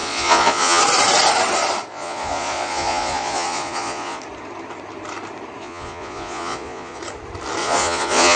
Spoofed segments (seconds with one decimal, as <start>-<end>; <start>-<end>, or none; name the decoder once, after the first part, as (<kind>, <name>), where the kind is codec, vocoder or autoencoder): 0.0-0.8 (vocoder, Vocos); 1.9-4.2; 5.6-7.0; 7.6-8.4